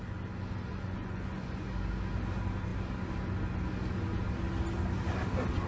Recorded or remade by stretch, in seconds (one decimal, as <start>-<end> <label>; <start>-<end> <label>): 0.0-0.7 recorded; 0.7-1.7 remade; 1.7-5.7 recorded